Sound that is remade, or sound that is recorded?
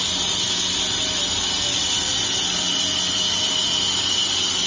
recorded